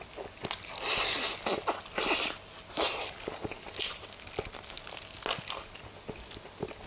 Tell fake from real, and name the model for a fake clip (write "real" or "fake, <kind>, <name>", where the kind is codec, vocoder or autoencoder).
real